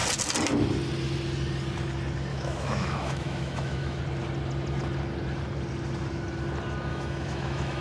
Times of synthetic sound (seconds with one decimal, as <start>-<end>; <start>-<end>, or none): 2.3-4.0; 6.9-7.8